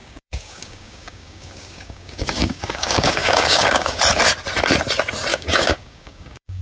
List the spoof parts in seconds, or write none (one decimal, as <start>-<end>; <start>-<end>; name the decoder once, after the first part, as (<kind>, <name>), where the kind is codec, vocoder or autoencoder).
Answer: 0.0-4.0 (codec, DAC); 5.3-6.6